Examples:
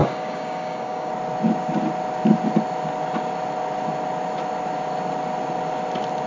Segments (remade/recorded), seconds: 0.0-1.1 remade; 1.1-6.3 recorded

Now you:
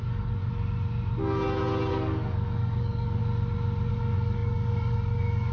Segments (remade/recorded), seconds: 0.0-0.4 remade; 0.4-1.9 recorded; 1.9-3.2 remade; 3.2-3.9 recorded; 3.9-5.5 remade

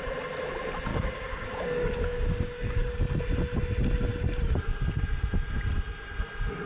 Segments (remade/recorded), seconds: 0.0-0.9 recorded; 0.9-2.9 remade; 2.9-6.7 recorded

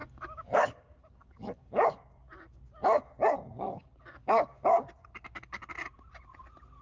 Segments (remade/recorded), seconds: 0.0-5.6 remade; 5.6-6.8 recorded

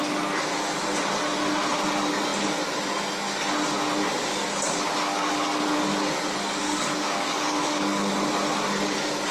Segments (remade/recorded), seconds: 0.0-5.1 recorded; 5.1-5.8 remade; 5.8-6.6 recorded; 6.6-8.1 remade; 8.1-9.3 recorded